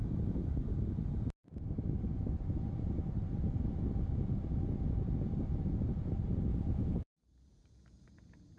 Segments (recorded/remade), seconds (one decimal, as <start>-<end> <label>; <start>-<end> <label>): 0.0-6.5 recorded; 6.5-8.1 remade; 8.1-8.6 recorded